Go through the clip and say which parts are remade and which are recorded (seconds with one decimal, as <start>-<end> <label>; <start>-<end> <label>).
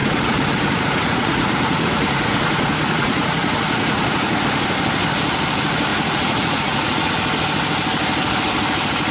0.0-4.4 remade; 4.4-5.9 recorded; 5.9-7.1 remade; 7.1-9.1 recorded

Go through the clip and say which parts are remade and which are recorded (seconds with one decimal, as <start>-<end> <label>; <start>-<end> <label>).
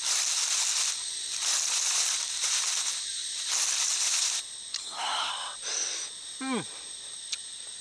0.0-4.8 recorded; 4.8-5.3 remade; 5.3-7.8 recorded